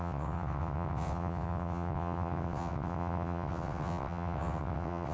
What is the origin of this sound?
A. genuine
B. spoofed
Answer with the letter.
B